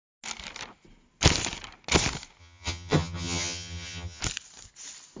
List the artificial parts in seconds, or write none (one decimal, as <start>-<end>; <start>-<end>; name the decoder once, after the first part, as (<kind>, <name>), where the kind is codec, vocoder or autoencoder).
2.4-4.2 (vocoder, HiFi-GAN)